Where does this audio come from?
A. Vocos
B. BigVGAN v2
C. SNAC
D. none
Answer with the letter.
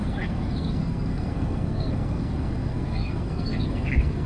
C